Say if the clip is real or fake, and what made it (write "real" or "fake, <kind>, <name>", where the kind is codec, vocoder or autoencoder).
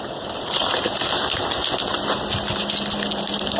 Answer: real